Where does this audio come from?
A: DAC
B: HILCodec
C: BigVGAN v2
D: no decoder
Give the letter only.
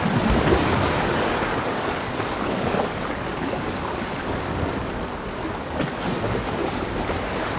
A